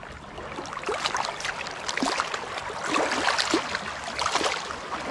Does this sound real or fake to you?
real